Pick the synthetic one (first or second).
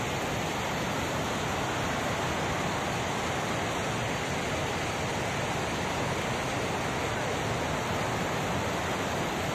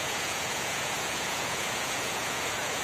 second